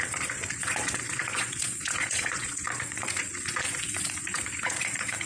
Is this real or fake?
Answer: fake